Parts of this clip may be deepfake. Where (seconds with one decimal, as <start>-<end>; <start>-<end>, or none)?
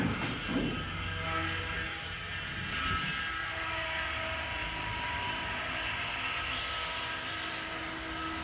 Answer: 3.4-4.1; 4.6-5.7